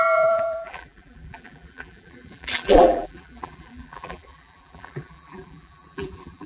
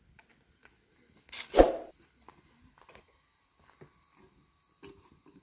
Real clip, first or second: second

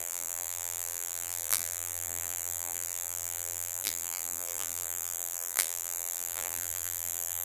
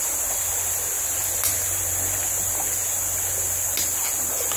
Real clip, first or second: second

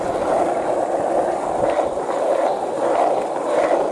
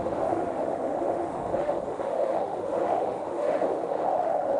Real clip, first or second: first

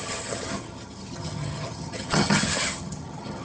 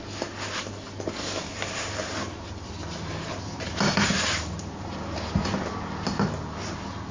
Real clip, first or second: second